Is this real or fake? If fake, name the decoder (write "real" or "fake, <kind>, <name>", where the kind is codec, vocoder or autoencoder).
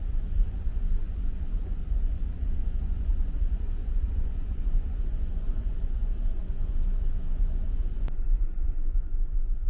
fake, vocoder, Vocos